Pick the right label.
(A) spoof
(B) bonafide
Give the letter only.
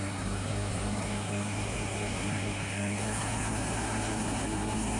A